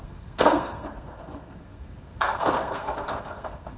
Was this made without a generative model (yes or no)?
no